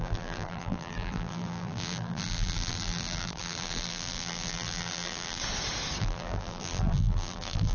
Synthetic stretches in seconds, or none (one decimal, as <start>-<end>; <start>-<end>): 0.0-5.4; 6.0-7.7